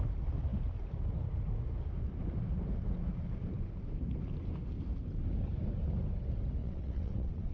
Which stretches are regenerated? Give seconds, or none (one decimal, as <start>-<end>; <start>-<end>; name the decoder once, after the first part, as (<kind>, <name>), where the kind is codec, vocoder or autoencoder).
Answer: 6.6-7.5 (vocoder, WaveNeXt)